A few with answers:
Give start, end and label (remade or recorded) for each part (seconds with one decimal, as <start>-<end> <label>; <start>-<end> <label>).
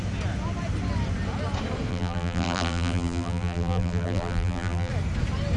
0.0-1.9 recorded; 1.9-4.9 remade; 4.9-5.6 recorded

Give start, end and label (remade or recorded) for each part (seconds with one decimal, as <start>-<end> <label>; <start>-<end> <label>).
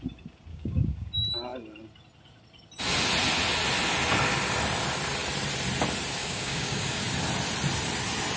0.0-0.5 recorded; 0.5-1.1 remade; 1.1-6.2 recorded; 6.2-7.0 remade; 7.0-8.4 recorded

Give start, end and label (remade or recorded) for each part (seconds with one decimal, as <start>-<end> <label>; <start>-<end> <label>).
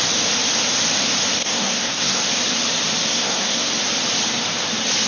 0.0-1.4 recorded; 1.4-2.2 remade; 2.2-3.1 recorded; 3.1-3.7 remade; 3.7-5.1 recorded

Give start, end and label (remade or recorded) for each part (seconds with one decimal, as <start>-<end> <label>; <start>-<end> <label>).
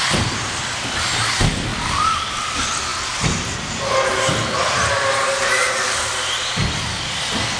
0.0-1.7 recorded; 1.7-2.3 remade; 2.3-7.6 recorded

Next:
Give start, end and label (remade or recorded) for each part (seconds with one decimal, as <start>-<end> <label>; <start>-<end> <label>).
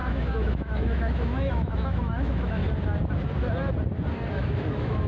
0.0-2.6 remade; 2.6-4.3 recorded; 4.3-5.1 remade